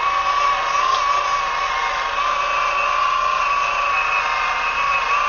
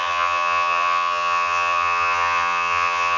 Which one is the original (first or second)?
first